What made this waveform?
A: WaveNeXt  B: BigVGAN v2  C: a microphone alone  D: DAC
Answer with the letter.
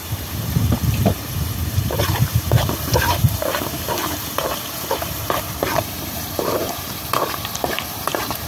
B